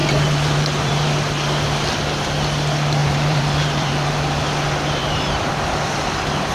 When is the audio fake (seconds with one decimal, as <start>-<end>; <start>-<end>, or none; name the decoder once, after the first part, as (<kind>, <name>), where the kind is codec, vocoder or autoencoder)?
0.0-1.1 (vocoder, BigVGAN v2); 3.0-4.4; 5.0-5.5